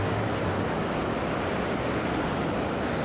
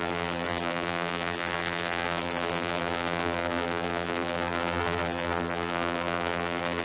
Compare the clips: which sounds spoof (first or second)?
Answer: second